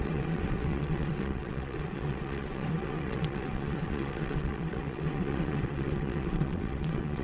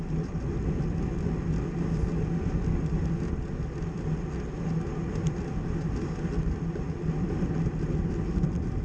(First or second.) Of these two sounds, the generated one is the first